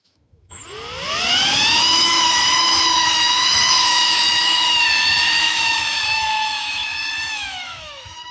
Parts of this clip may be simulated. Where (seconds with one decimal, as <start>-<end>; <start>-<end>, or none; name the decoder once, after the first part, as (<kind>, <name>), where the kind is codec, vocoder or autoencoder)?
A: 0.0-0.6 (autoencoder, DAC-VAE); 1.8-8.3